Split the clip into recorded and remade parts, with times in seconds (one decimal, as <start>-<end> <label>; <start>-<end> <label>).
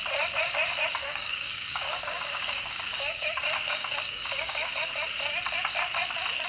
0.0-1.0 recorded; 1.0-4.9 remade; 4.9-6.5 recorded